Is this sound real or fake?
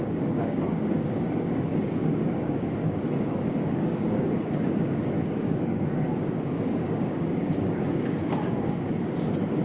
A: fake